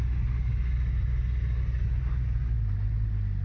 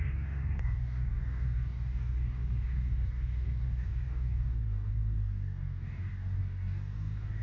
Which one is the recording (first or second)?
first